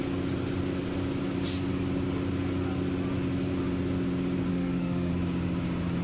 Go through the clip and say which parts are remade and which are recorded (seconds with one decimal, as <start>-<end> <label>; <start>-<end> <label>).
0.0-4.5 recorded; 4.5-5.1 remade; 5.1-6.0 recorded